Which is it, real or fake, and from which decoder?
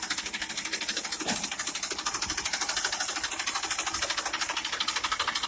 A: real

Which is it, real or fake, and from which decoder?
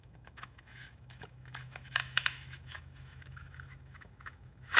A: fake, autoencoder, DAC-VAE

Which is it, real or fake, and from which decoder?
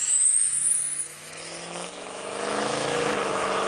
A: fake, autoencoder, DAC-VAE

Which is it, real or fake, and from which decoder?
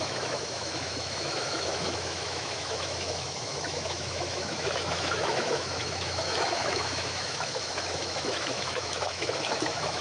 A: fake, autoencoder, DAC-VAE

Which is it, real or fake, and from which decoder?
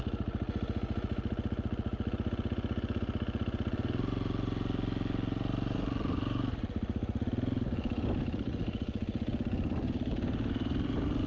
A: real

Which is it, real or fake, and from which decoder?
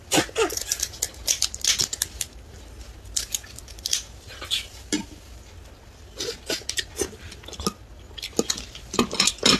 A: real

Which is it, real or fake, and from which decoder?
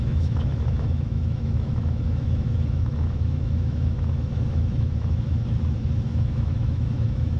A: fake, autoencoder, DAC-VAE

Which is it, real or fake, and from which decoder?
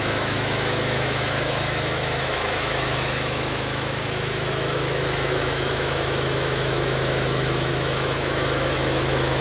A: fake, autoencoder, DAC-VAE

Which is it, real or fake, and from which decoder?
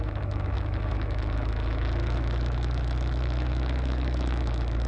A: fake, autoencoder, DAC-VAE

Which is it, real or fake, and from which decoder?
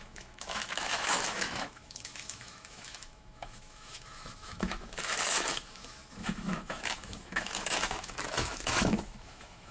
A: fake, autoencoder, DAC-VAE